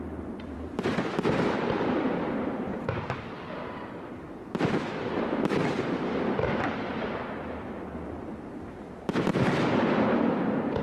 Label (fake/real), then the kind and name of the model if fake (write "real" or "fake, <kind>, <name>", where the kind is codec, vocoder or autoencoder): fake, vocoder, BigVGAN v2